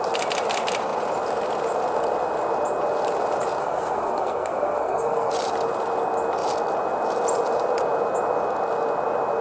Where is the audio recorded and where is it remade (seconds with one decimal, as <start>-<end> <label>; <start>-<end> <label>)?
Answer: 0.0-3.6 recorded; 3.6-5.3 remade; 5.3-9.4 recorded